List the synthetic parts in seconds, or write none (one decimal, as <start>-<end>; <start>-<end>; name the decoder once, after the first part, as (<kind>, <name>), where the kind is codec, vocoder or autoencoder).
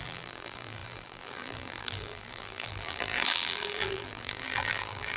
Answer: 0.0-5.2 (vocoder, BigVGAN v2)